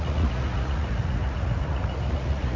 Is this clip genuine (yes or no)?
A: no